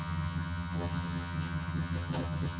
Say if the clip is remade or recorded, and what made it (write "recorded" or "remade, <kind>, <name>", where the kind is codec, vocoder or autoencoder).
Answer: remade, vocoder, HiFi-GAN